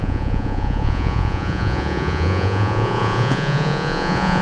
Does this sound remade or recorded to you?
remade